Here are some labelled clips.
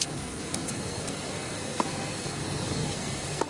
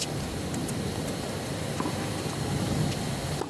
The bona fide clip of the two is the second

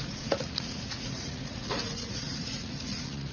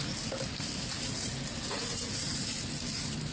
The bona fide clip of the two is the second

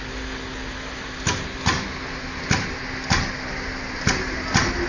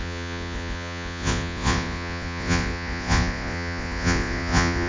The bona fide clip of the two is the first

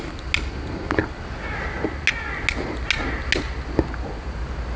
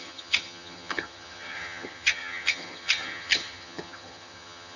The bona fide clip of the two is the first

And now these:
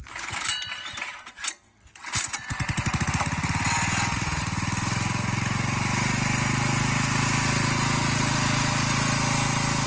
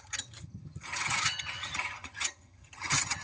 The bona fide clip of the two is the first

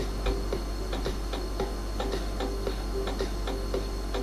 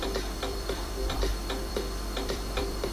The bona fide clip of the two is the first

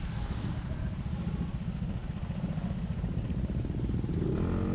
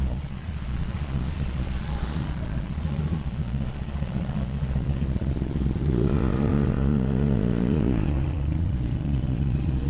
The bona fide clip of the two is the first